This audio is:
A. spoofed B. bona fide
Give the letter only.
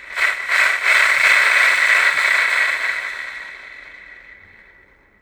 B